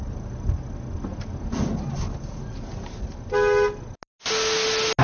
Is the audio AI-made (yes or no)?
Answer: no